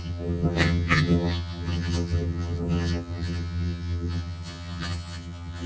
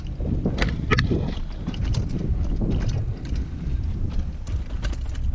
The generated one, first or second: first